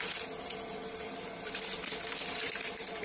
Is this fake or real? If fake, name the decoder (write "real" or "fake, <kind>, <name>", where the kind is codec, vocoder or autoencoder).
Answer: fake, vocoder, BigVGAN v2